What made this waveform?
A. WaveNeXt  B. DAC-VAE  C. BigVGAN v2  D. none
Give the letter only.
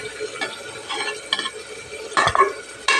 D